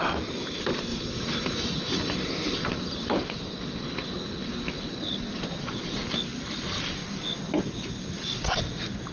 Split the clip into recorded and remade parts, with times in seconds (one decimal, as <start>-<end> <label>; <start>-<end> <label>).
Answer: 0.0-0.9 recorded; 0.9-3.1 remade; 3.1-9.1 recorded